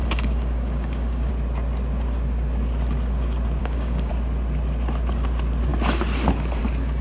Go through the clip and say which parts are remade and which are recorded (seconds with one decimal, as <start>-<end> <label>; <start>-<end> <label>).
0.0-1.3 remade; 1.3-3.6 recorded; 3.6-4.1 remade; 4.1-7.0 recorded